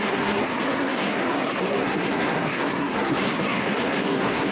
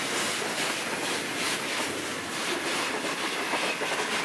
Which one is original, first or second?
second